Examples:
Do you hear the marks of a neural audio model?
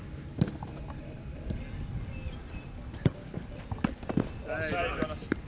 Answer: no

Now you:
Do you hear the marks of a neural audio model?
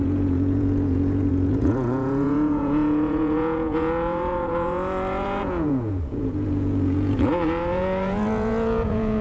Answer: yes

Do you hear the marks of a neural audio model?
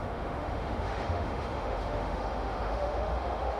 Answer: yes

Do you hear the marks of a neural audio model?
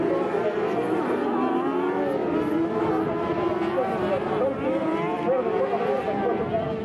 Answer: no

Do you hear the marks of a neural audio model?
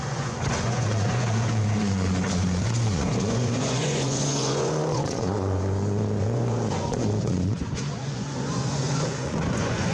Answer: yes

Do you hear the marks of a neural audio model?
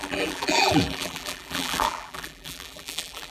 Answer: yes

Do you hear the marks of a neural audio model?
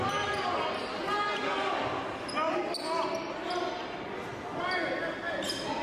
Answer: no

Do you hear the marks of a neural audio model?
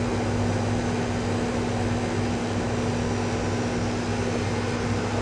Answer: no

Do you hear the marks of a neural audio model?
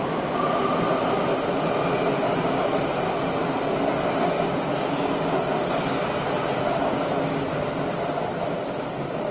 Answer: no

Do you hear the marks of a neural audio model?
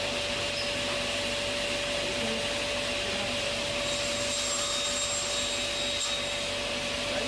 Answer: no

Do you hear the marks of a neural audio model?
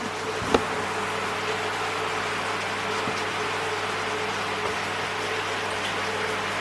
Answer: no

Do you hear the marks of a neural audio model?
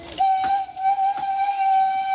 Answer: no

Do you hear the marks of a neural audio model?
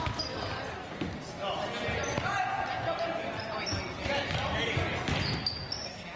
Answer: no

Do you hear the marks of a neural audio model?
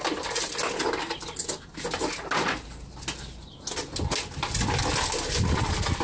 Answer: no